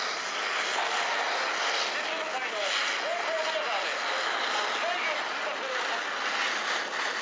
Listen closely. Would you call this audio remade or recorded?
recorded